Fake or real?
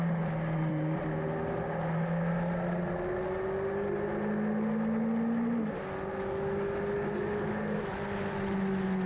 real